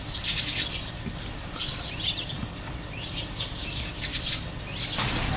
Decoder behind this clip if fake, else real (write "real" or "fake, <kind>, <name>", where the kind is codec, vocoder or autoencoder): real